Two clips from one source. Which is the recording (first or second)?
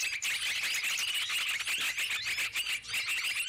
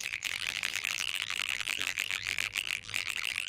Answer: first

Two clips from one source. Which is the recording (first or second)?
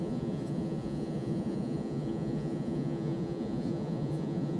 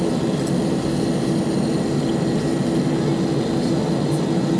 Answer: second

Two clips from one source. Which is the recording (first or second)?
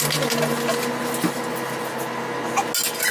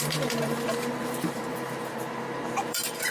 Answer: first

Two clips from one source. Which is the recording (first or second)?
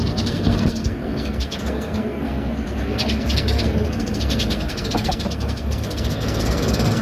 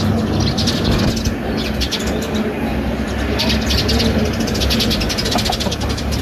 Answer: second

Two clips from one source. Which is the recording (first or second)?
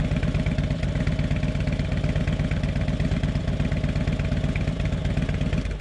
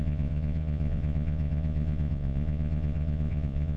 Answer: first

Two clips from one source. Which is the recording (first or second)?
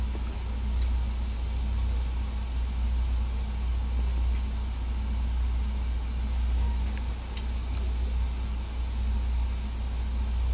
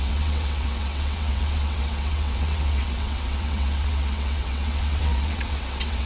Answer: first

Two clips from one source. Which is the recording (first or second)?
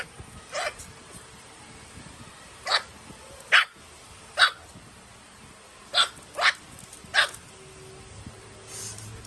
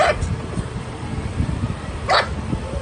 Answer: first